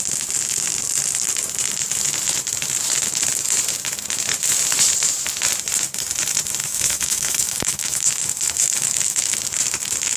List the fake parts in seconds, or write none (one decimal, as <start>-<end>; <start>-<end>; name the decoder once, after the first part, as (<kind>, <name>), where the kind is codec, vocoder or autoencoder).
6.6-9.4 (autoencoder, DAC-VAE)